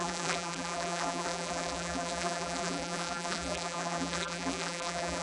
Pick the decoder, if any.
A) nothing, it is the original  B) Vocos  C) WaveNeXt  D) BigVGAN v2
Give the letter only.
D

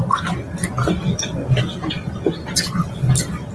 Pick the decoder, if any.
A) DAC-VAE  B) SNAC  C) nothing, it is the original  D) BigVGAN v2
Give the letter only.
C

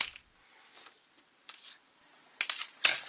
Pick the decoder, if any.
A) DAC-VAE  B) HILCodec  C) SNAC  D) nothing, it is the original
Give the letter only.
D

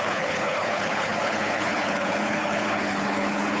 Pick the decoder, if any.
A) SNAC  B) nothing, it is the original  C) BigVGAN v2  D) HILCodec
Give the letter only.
D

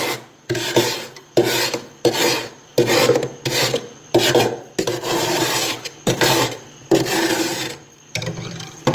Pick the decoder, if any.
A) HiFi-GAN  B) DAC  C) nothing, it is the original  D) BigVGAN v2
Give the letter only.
D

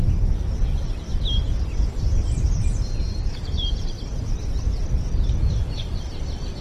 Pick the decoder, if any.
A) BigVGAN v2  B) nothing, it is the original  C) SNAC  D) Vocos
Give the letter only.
B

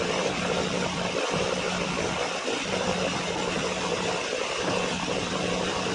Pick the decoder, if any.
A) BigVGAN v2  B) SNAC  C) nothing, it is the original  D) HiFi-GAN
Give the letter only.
C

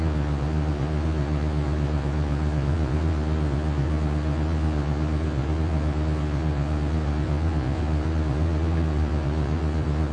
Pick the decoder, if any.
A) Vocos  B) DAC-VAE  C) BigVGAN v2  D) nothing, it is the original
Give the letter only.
A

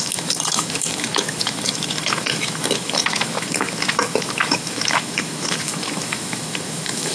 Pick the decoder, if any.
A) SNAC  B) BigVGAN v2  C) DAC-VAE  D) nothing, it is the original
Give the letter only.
C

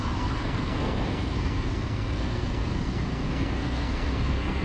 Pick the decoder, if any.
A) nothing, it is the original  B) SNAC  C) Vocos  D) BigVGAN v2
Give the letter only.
B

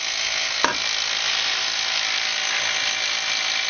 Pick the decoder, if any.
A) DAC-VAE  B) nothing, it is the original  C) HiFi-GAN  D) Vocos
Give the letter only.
B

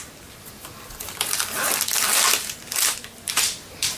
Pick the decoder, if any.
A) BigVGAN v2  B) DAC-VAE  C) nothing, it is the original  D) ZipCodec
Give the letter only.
C